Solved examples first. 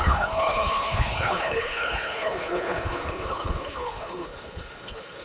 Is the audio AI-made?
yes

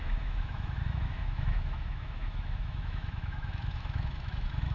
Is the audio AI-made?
yes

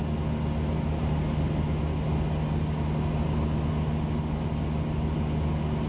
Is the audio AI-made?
no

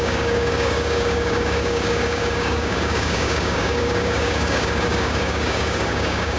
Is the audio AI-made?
yes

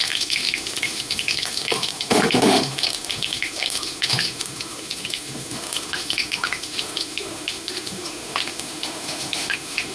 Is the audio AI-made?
yes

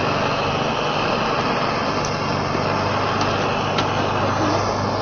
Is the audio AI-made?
no